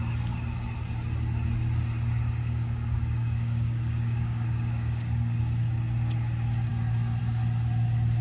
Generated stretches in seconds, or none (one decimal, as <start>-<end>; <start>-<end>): 2.4-5.4